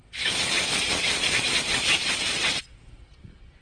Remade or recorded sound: remade